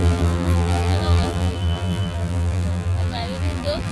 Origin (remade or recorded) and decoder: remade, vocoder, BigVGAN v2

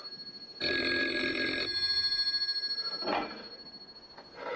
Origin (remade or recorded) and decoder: recorded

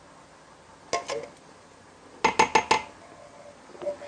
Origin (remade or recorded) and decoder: recorded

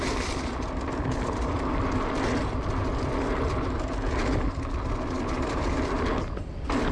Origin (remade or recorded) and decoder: recorded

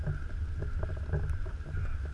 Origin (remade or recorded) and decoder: recorded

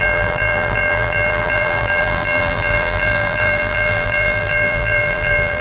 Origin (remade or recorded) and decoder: remade, vocoder, BigVGAN v2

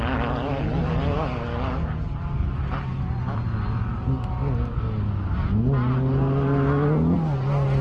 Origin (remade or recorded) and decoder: recorded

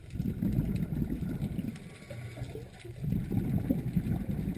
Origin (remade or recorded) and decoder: recorded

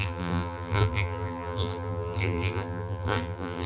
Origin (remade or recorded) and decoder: remade, vocoder, BigVGAN v2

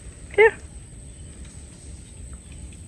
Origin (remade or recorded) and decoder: recorded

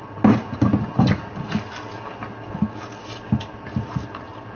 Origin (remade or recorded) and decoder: recorded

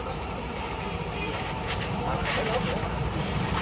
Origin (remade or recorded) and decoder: remade, vocoder, BigVGAN v2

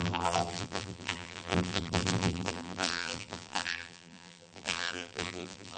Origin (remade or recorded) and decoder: remade, vocoder, BigVGAN v2